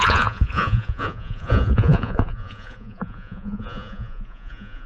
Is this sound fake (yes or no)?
yes